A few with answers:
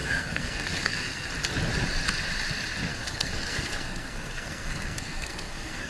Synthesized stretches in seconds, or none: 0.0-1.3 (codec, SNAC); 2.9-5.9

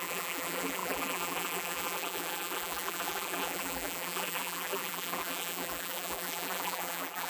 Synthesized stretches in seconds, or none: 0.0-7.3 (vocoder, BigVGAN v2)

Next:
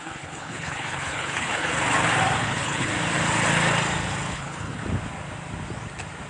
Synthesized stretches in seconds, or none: 0.0-1.7 (codec, HILCodec); 2.4-2.9; 4.3-4.8